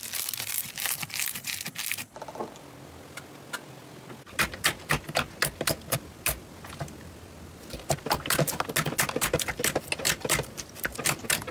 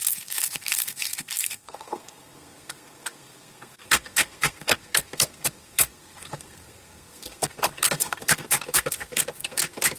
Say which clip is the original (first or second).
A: first